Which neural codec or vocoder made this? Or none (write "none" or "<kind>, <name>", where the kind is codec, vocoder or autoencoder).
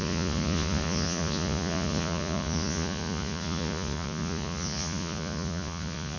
vocoder, Vocos